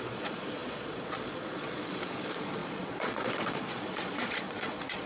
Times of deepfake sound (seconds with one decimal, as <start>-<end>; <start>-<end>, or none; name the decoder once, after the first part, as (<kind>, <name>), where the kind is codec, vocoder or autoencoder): 0.0-5.1 (vocoder, Vocos)